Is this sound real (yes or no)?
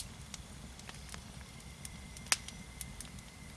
yes